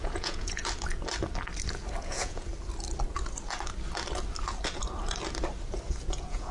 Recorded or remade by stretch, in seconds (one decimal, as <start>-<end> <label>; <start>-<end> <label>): 0.0-0.6 remade; 0.6-2.0 recorded; 2.0-2.5 remade; 2.5-6.0 recorded; 6.0-6.5 remade